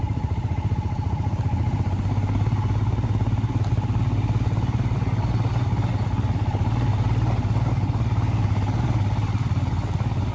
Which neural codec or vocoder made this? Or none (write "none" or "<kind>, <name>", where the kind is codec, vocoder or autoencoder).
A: none